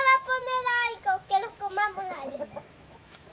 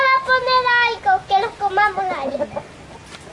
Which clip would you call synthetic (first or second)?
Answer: first